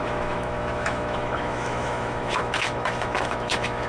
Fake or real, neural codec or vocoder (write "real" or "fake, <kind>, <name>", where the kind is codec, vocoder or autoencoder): fake, autoencoder, DAC-VAE